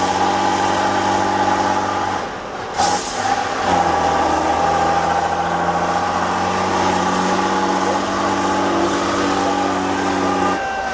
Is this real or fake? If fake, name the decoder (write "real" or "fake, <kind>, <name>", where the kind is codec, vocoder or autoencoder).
real